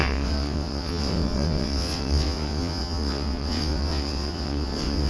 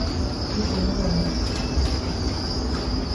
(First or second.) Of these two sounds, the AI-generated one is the first